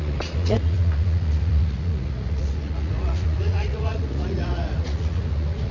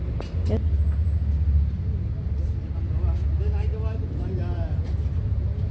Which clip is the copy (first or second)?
first